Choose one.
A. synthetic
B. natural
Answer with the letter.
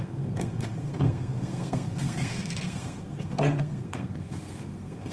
A